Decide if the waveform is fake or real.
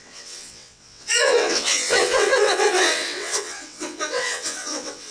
fake